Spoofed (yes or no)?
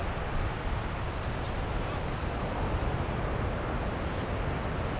no